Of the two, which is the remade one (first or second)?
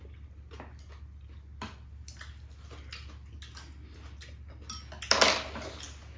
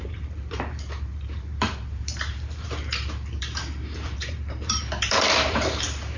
second